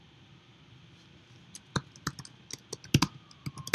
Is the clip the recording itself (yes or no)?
yes